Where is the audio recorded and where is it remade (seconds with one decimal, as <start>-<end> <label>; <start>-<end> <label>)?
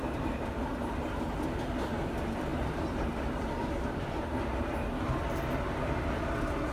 0.0-6.7 recorded